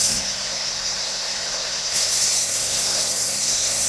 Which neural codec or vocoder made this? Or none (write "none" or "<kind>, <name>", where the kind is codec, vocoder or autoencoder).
codec, SNAC